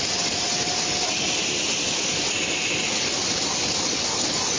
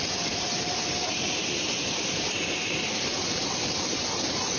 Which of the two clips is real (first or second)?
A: first